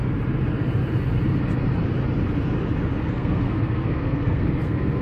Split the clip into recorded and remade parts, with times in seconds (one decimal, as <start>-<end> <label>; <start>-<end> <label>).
0.0-3.0 recorded; 3.0-5.0 remade